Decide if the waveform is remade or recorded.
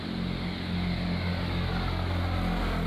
recorded